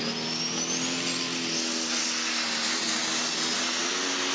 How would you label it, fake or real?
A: real